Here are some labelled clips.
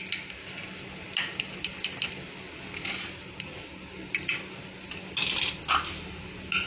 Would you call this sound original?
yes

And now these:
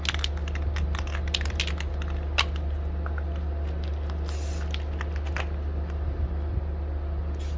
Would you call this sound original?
yes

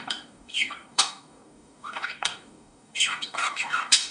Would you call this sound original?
no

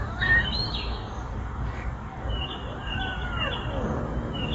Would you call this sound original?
no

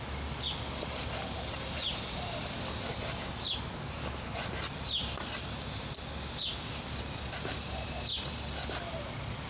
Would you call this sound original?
yes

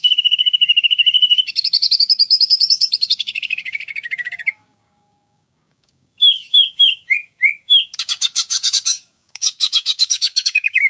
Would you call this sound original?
no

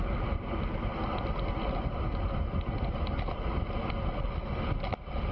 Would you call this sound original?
yes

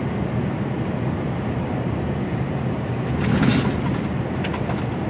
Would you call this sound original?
yes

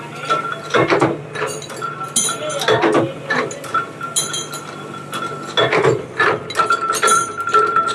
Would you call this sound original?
yes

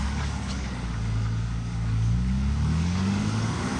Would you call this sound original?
no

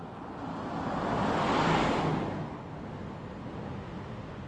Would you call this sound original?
yes